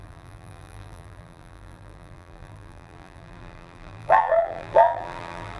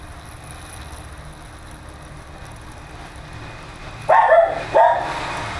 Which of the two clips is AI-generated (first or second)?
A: first